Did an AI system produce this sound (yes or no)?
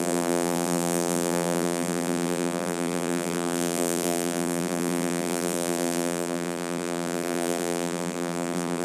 yes